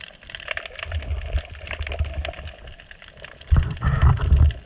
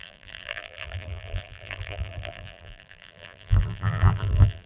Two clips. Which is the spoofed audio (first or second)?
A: second